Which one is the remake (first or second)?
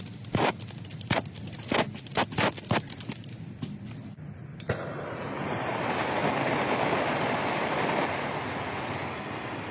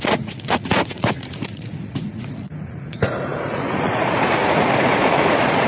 second